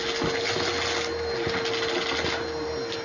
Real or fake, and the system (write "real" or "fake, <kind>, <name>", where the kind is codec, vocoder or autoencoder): real